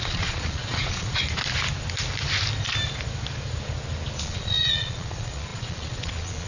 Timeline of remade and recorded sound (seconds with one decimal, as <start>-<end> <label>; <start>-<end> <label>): 0.0-1.2 remade; 1.2-4.2 recorded; 4.2-6.5 remade